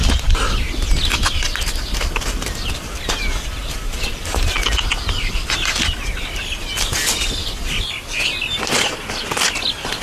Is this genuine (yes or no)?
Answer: yes